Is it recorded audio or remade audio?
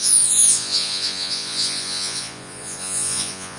remade